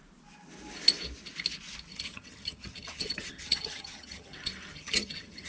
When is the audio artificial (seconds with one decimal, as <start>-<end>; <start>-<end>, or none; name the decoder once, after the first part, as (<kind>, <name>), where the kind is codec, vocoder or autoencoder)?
1.9-5.5 (vocoder, HiFi-GAN)